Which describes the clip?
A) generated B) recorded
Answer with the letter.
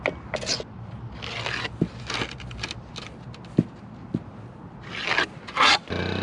B